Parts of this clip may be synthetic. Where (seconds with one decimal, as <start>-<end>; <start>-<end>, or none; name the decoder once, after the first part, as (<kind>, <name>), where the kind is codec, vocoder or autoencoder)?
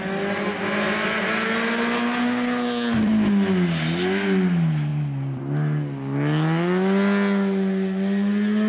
none